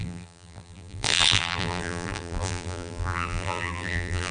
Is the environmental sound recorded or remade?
remade